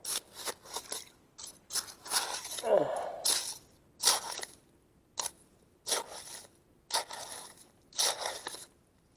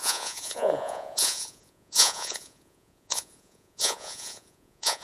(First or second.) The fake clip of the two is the second